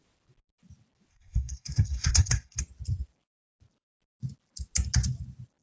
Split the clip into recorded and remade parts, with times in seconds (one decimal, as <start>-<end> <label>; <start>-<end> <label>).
0.0-1.1 recorded; 1.1-2.6 remade; 2.6-5.6 recorded